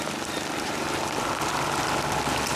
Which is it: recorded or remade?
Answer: recorded